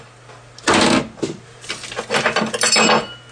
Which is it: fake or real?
real